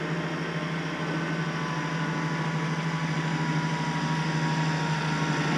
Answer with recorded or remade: recorded